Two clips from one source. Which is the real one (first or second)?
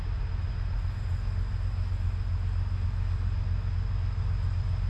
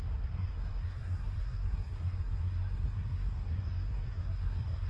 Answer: first